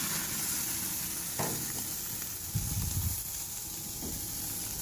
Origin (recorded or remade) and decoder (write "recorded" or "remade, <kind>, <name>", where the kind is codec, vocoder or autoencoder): recorded